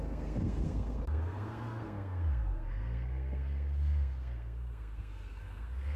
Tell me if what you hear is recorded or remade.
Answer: remade